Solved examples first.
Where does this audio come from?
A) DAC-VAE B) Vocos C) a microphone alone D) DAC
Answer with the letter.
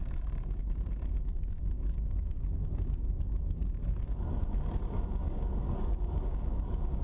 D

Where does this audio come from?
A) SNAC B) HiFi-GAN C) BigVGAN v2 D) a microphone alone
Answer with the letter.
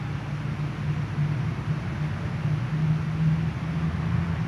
D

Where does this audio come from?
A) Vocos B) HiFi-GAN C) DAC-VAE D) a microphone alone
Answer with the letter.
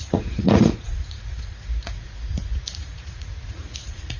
A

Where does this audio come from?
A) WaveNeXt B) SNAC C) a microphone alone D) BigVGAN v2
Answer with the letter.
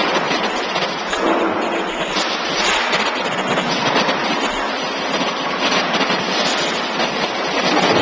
C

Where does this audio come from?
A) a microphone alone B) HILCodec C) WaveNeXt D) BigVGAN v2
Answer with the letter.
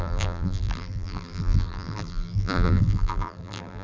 D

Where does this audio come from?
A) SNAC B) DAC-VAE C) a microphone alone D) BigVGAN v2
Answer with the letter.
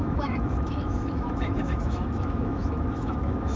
B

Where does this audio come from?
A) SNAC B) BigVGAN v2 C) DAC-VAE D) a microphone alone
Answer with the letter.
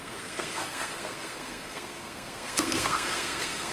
A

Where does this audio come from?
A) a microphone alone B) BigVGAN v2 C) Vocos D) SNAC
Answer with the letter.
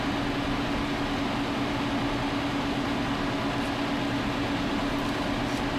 A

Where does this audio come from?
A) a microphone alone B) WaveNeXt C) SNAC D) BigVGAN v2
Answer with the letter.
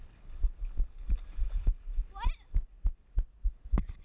A